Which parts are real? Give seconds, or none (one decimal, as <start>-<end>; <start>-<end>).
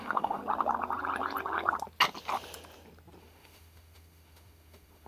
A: 0.4-3.2